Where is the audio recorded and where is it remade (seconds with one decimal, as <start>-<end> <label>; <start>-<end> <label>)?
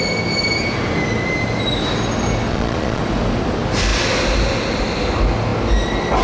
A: 0.0-2.5 recorded; 2.5-3.0 remade; 3.0-6.2 recorded